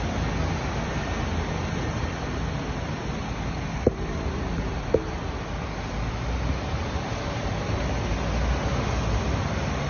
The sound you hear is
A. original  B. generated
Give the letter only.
A